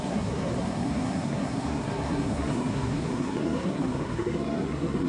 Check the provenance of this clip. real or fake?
fake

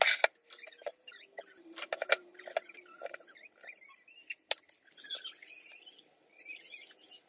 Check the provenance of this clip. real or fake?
real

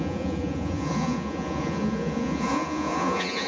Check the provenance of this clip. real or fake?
fake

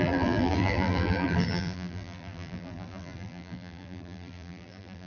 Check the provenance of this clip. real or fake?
fake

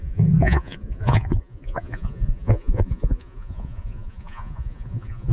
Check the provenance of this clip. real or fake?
fake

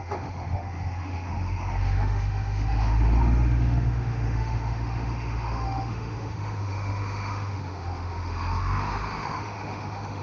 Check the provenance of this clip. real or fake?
fake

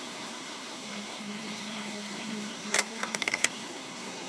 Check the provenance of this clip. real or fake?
fake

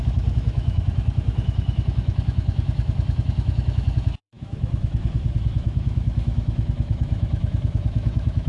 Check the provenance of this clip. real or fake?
fake